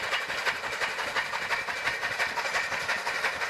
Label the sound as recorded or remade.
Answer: recorded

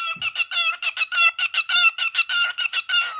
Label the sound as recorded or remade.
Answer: recorded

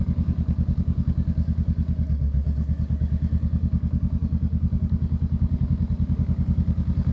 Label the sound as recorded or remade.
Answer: remade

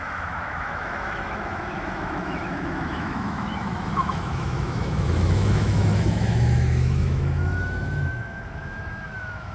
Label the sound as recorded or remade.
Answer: remade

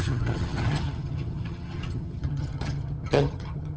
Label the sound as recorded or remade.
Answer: remade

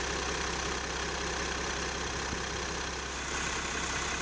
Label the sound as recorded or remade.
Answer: recorded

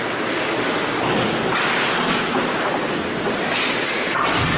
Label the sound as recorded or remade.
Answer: recorded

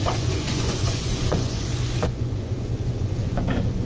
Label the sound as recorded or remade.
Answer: remade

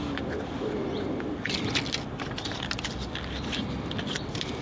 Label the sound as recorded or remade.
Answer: recorded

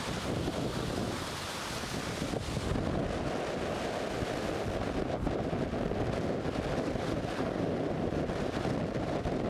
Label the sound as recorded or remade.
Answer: recorded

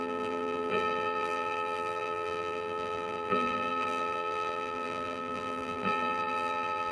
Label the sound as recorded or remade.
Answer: remade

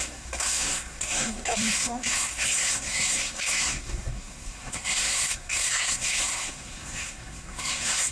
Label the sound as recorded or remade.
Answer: remade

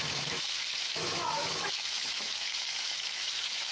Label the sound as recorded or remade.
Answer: remade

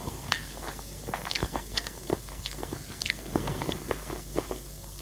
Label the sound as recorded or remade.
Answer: remade